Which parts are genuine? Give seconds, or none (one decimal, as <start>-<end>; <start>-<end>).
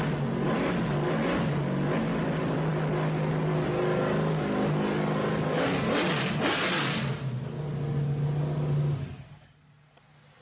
0.0-10.4